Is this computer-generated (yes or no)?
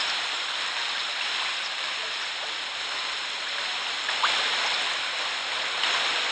no